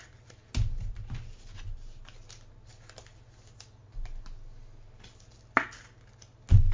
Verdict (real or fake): real